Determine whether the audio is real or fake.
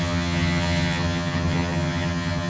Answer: fake